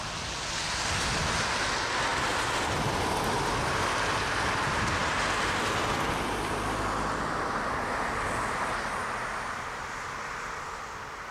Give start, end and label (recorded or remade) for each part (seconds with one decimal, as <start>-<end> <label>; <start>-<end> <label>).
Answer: 0.0-11.3 recorded